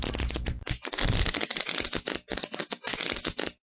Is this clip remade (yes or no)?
no